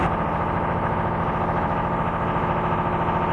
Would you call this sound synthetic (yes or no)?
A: no